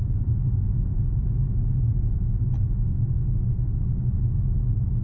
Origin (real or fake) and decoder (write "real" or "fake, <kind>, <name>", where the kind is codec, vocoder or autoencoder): real